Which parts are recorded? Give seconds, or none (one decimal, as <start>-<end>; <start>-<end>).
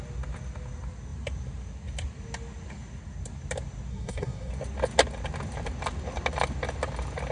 0.0-3.9; 4.5-7.3